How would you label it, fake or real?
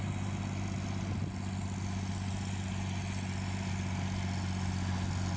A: real